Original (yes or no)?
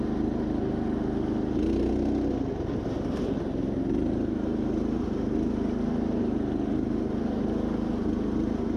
yes